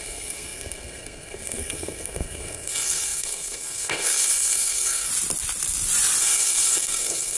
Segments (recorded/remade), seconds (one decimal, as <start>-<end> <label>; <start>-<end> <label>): 0.0-5.1 remade; 5.1-6.2 recorded; 6.2-7.4 remade